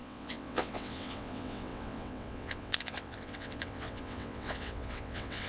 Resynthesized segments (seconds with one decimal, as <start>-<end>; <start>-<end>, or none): 0.0-5.5